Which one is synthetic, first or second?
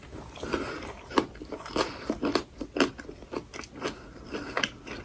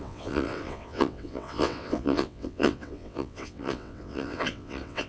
second